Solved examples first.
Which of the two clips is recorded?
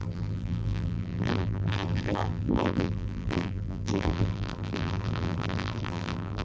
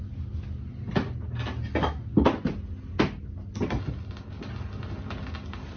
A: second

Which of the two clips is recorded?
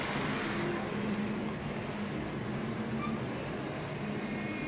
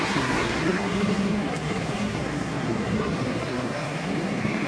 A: first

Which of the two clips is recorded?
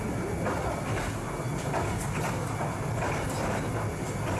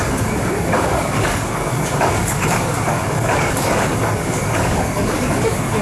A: first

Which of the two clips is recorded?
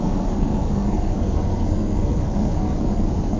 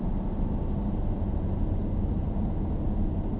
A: second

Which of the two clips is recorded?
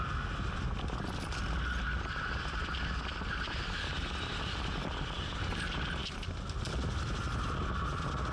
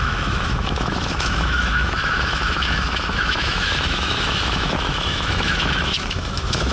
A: first